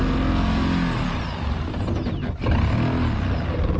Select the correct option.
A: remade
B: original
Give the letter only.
B